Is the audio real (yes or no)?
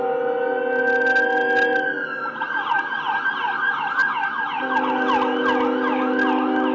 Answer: yes